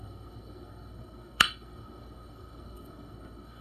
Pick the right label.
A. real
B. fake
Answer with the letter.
B